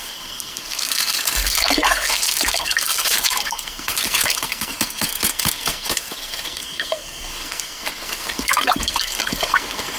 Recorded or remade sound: remade